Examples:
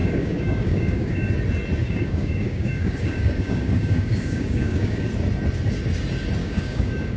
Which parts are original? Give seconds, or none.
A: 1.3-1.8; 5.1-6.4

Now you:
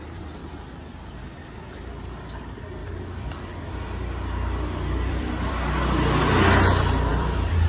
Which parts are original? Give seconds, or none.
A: 0.0-2.8; 5.5-7.1

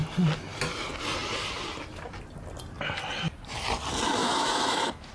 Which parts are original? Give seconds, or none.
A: 0.0-4.2